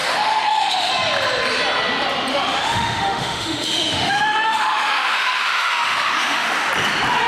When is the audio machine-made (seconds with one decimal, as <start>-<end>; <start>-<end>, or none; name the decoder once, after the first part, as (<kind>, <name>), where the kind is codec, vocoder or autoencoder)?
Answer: 0.0-0.9 (autoencoder, DAC-VAE); 2.3-6.7